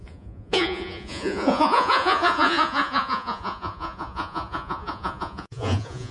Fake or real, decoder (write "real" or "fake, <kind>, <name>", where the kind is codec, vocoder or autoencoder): fake, vocoder, Vocos